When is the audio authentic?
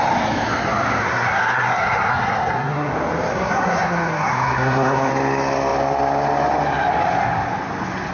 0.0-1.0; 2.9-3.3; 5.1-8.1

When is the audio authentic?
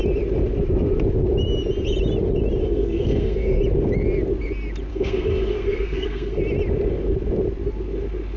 0.0-2.6; 3.6-4.9; 6.4-8.4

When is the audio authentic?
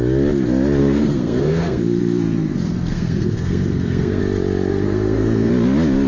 0.0-0.8; 4.2-4.7; 5.5-6.1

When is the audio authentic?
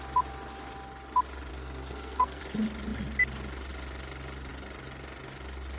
0.0-1.5; 2.4-5.8